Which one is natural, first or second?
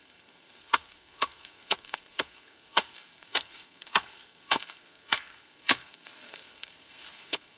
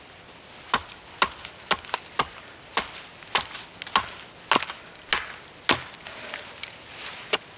second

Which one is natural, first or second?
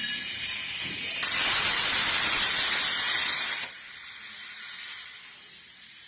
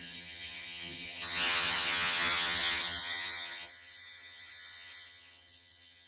first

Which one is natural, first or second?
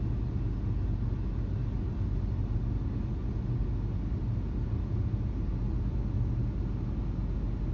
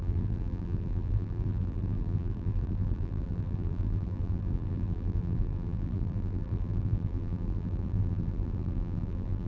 first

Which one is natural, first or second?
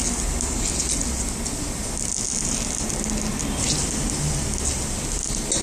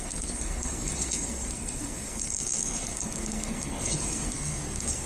first